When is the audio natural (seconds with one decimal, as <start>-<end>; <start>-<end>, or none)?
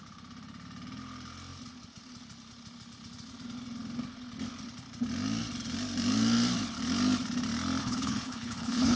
0.0-7.8